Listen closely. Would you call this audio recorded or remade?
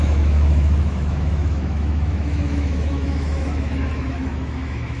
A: remade